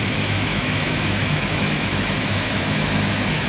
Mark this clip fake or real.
fake